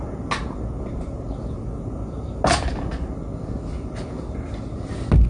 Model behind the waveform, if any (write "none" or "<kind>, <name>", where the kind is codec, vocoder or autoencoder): none